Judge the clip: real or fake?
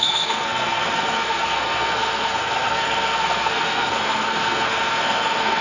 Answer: fake